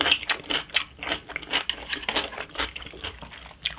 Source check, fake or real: real